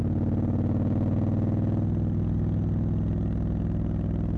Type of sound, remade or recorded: recorded